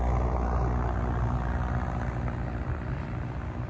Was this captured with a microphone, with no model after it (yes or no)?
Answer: yes